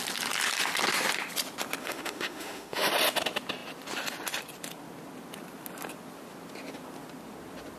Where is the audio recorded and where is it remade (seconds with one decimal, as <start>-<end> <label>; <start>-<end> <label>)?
0.0-1.8 recorded; 1.8-2.9 remade; 2.9-7.8 recorded